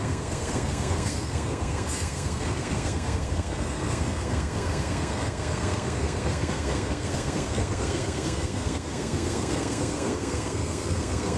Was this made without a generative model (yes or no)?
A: no